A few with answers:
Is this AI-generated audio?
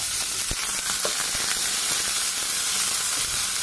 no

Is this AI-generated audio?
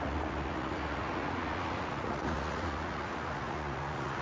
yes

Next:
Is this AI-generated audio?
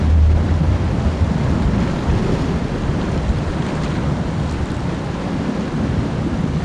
no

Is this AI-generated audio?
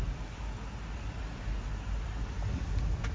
no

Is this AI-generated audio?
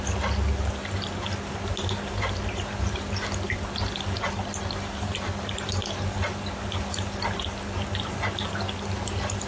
no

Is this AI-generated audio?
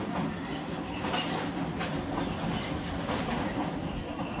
no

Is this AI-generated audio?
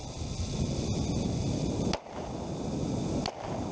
no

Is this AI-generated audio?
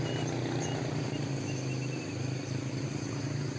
no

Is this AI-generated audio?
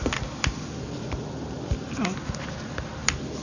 no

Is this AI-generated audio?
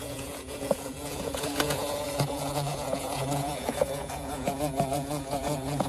yes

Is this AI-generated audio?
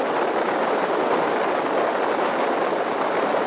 no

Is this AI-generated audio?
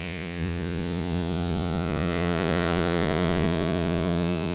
yes